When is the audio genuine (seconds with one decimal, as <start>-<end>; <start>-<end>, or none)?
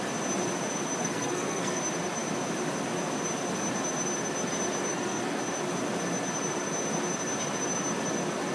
0.0-1.0; 1.8-4.9; 5.4-8.5